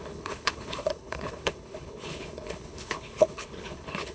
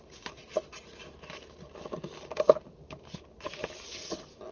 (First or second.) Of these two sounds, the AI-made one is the first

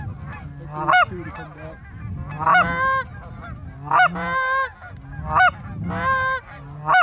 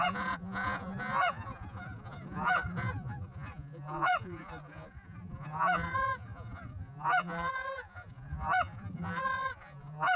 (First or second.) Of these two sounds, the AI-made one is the second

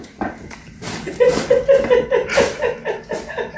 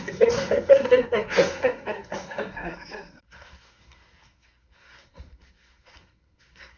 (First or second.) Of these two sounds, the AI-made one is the second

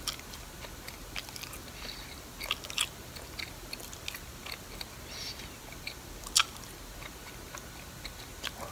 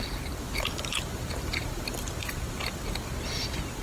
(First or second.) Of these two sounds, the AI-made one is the second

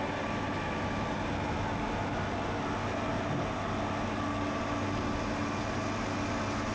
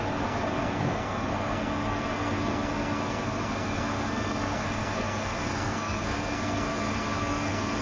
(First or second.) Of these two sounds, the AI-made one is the second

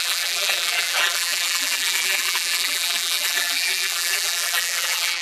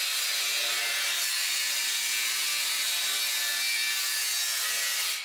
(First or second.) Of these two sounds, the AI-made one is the first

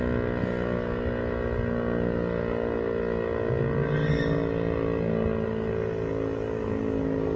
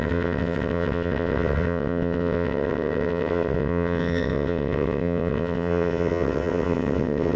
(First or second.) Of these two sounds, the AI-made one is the second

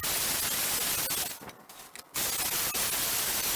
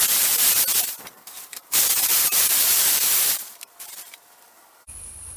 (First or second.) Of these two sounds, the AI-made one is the second